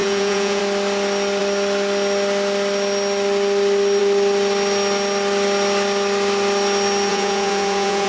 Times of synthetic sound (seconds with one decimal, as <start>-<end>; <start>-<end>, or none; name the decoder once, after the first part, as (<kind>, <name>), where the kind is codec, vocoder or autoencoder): 0.0-0.6 (vocoder, Vocos); 7.1-8.1